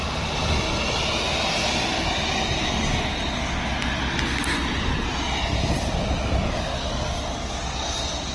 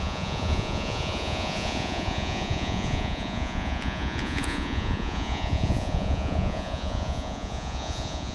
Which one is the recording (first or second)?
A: first